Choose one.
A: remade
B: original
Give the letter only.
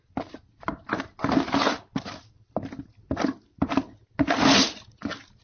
B